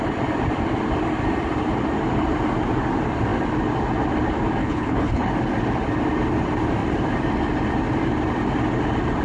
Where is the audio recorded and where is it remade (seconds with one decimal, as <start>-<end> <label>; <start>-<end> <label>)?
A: 0.0-4.6 recorded; 4.6-5.3 remade; 5.3-9.2 recorded